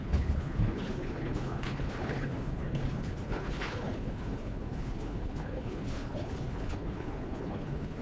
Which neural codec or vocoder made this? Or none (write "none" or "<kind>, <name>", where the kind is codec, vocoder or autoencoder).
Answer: codec, HILCodec